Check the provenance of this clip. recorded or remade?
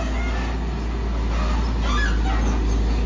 recorded